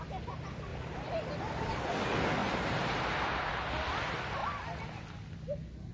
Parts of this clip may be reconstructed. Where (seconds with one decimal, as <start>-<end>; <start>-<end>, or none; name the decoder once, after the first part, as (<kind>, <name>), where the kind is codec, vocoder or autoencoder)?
0.7-1.5 (vocoder, BigVGAN v2); 2.4-3.5